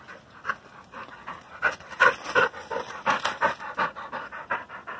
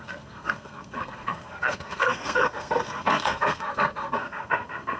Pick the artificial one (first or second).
second